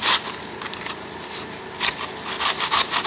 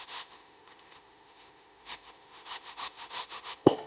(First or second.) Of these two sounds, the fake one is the second